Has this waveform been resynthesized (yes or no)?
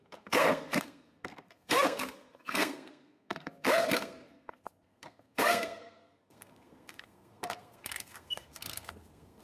yes